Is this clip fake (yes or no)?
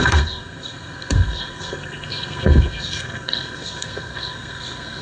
yes